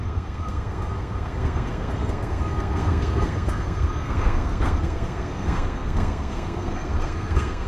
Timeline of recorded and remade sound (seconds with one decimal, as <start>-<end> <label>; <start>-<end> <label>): 0.0-7.7 remade